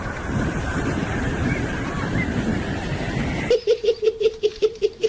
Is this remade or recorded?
remade